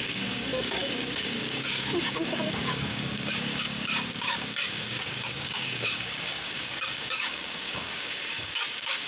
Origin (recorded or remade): remade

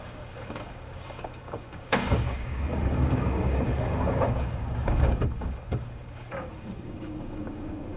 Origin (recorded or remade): remade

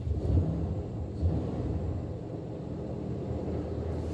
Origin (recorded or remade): recorded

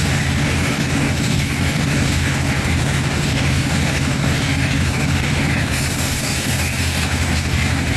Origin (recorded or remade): remade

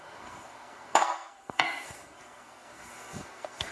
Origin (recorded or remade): remade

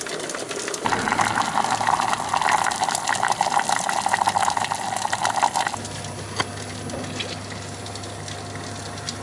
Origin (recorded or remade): recorded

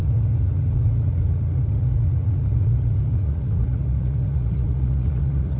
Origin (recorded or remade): remade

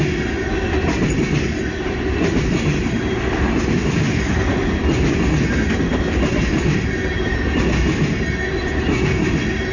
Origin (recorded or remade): recorded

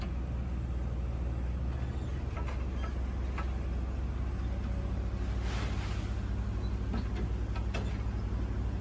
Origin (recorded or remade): recorded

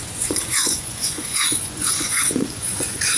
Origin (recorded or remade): remade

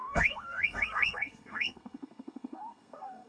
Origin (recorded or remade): remade